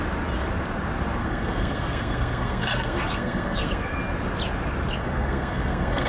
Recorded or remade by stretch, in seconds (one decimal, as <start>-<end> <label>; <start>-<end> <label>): 0.0-1.2 recorded; 1.2-4.0 remade; 4.0-5.0 recorded; 5.0-6.1 remade